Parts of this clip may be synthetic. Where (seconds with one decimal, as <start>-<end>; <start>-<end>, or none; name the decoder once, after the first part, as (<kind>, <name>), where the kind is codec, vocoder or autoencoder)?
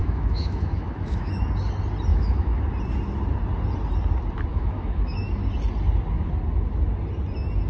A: 0.0-1.4 (autoencoder, DAC-VAE); 2.1-2.6; 4.5-5.3